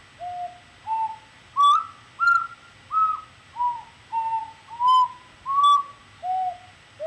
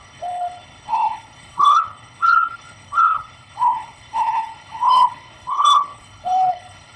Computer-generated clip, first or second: second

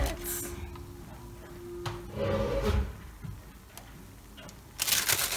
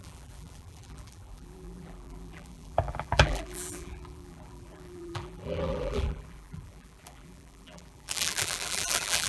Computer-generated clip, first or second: second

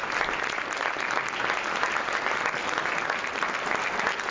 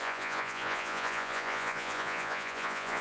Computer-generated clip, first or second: second